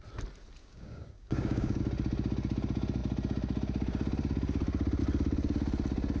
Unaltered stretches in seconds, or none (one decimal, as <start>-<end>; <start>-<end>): 0.0-0.6; 1.8-6.2